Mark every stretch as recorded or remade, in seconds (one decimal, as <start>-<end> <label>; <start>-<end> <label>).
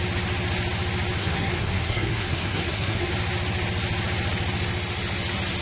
0.0-1.2 recorded; 1.2-3.1 remade; 3.1-5.6 recorded